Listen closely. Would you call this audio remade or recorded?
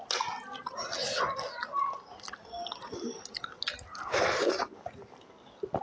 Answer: recorded